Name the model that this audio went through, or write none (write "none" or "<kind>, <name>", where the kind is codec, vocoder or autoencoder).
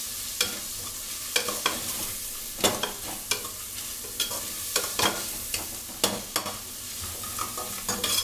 none